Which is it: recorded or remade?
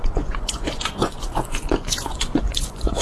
remade